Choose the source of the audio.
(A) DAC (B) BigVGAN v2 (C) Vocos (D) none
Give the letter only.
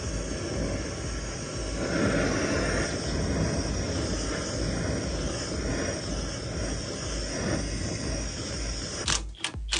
D